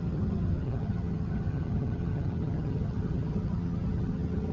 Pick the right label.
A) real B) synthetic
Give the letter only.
B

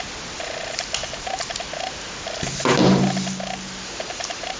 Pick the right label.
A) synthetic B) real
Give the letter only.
B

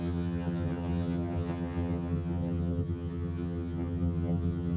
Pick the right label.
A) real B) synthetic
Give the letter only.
B